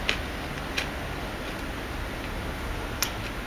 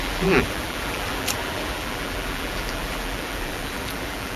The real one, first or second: first